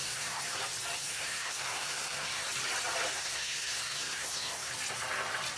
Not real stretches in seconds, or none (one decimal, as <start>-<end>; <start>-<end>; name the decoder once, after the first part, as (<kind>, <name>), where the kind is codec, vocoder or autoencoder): 0.0-0.6 (codec, SNAC); 1.0-2.5; 3.1-4.7